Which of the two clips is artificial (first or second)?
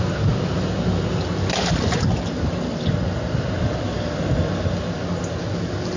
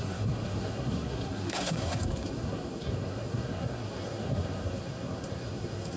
second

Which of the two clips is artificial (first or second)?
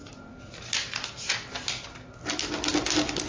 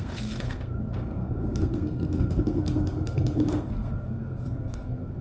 second